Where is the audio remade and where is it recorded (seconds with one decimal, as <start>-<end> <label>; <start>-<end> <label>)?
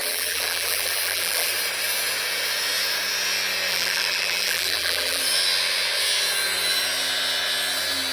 0.0-1.5 remade; 1.5-3.7 recorded; 3.7-5.2 remade; 5.2-8.1 recorded